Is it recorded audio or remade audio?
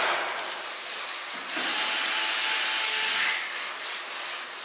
recorded